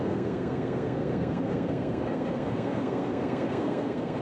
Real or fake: fake